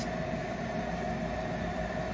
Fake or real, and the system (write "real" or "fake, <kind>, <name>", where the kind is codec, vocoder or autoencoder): real